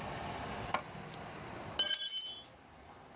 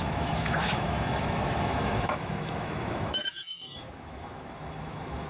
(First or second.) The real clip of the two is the first